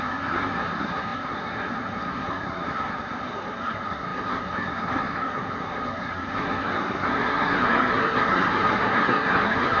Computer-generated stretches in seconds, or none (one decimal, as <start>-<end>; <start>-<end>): 0.0-9.8